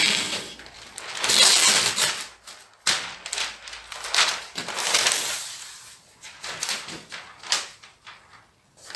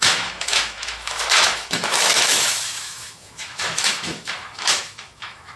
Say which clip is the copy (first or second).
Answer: second